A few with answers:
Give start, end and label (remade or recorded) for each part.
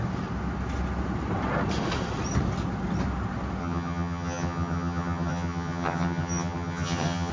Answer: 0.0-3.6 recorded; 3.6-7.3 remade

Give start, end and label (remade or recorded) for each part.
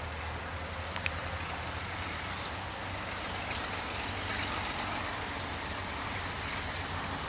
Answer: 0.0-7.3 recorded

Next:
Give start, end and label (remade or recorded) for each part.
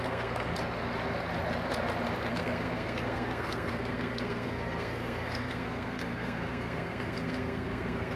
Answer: 0.0-0.5 remade; 0.5-2.3 recorded; 2.3-8.2 remade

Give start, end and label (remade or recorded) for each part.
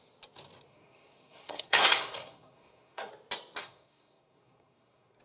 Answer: 0.0-0.7 recorded; 0.7-3.1 remade; 3.1-3.6 recorded; 3.6-5.2 remade